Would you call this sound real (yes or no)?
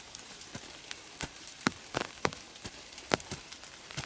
no